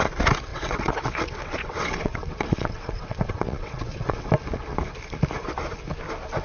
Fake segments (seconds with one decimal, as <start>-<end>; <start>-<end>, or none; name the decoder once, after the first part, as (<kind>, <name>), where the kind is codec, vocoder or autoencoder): 0.5-4.3 (vocoder, WaveNeXt)